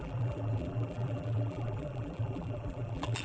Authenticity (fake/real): fake